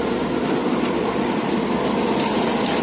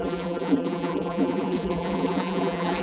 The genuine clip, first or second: first